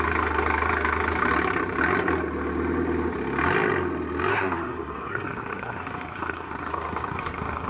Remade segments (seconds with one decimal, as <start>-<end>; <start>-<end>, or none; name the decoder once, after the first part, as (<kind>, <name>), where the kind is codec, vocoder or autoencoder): 4.3-7.7 (codec, SNAC)